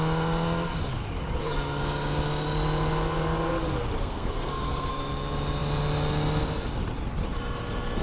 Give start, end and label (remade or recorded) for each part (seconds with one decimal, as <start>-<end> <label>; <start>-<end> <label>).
0.0-4.0 recorded; 4.0-4.9 remade; 4.9-8.0 recorded